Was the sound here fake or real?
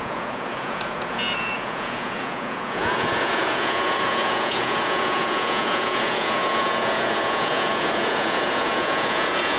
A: fake